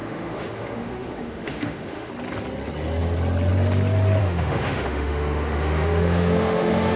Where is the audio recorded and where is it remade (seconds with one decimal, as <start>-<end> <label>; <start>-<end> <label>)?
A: 0.0-2.1 remade; 2.1-4.2 recorded; 4.2-7.0 remade